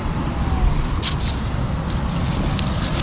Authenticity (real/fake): real